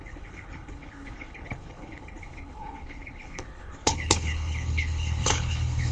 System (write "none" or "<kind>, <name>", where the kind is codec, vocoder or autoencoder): codec, HILCodec